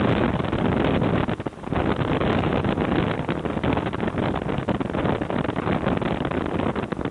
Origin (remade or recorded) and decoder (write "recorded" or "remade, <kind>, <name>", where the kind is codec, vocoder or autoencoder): recorded